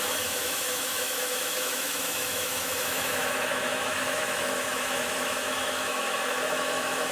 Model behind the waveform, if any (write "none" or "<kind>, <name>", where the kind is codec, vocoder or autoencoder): autoencoder, DAC-VAE